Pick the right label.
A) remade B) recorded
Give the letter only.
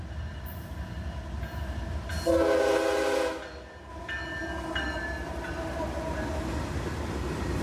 B